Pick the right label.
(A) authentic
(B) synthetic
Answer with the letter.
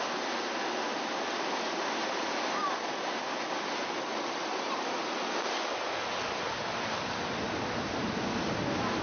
A